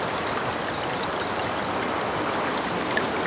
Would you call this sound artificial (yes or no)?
no